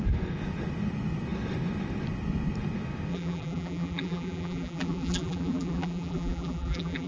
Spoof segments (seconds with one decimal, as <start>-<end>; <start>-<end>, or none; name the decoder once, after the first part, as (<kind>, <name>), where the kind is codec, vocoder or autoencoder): 3.1-7.1 (vocoder, BigVGAN v2)